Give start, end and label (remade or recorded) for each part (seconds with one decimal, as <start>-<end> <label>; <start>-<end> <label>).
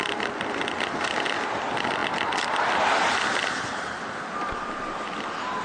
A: 0.0-5.6 recorded